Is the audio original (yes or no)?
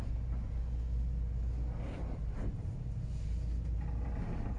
yes